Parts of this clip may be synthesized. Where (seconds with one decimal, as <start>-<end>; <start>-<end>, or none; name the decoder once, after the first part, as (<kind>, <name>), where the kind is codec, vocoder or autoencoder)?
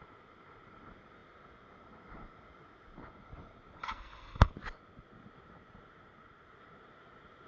3.8-4.5 (codec, SNAC)